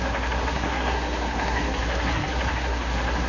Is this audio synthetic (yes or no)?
yes